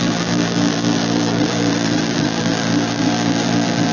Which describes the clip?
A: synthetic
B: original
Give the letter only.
A